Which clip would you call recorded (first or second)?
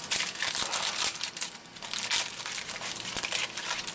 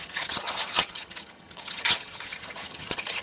first